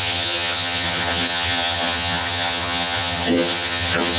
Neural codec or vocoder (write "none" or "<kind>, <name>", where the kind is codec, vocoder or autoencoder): vocoder, HiFi-GAN